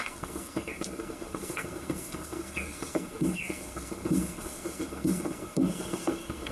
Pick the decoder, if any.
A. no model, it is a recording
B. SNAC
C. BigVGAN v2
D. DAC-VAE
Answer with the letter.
B